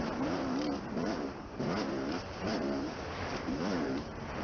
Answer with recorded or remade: remade